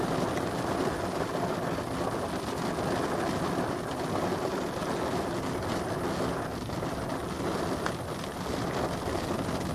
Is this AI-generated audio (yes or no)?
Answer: no